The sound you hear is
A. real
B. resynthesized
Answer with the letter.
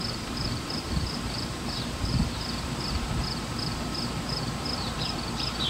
B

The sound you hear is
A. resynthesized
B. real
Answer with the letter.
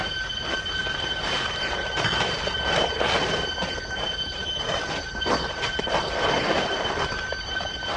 B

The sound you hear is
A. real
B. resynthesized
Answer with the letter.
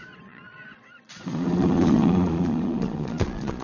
B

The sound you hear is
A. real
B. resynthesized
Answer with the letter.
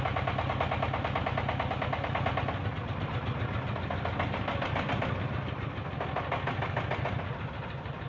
A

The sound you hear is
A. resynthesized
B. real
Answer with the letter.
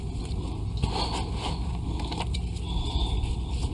B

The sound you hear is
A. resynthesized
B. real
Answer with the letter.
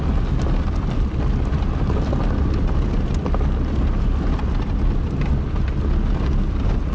B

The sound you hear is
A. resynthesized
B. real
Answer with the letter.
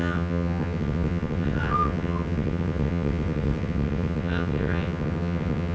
A